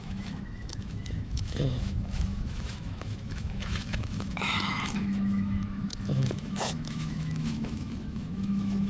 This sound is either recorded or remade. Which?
remade